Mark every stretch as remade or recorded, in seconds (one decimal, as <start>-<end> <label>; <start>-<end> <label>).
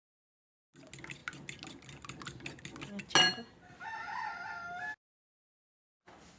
0.0-6.4 recorded